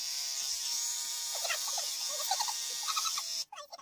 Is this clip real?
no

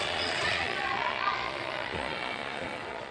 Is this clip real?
no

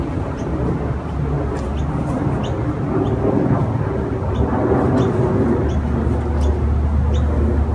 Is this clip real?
yes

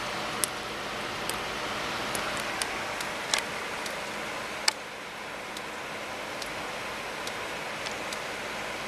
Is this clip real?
yes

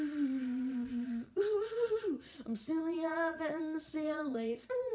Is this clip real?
no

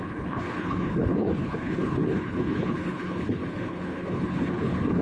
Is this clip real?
no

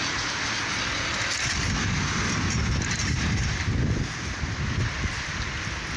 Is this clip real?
yes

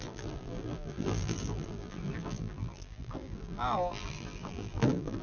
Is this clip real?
no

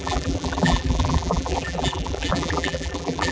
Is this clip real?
no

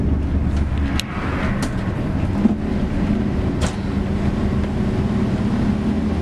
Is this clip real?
yes